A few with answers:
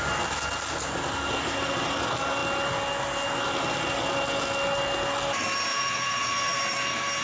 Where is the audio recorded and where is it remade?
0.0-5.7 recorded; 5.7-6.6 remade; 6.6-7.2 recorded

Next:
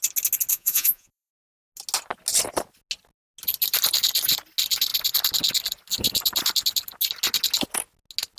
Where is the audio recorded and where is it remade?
0.0-0.5 recorded; 0.5-1.3 remade; 1.3-8.4 recorded

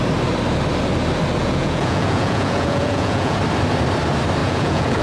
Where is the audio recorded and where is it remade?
0.0-1.4 recorded; 1.4-3.4 remade; 3.4-4.4 recorded; 4.4-5.0 remade

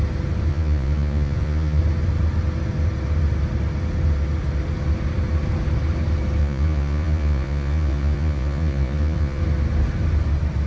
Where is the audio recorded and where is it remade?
0.0-0.5 recorded; 0.5-1.8 remade; 1.8-6.4 recorded; 6.4-9.4 remade; 9.4-10.7 recorded

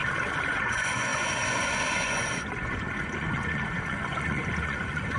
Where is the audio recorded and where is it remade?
0.0-0.5 recorded; 0.5-5.2 remade